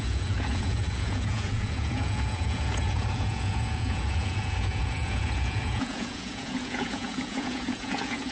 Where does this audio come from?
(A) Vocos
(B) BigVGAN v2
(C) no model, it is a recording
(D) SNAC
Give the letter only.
A